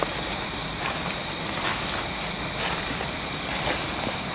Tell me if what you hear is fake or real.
real